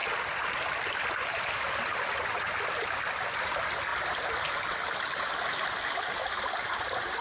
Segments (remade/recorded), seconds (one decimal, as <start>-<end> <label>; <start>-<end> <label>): 0.0-7.2 recorded